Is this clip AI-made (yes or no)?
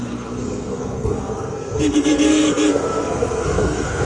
yes